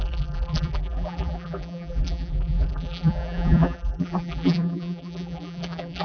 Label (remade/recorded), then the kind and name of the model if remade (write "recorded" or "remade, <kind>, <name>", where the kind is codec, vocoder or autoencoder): remade, vocoder, BigVGAN v2